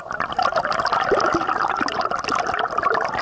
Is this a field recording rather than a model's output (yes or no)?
yes